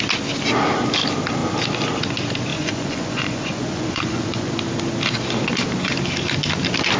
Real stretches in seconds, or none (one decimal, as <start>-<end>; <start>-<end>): 0.0-2.5; 4.5-7.0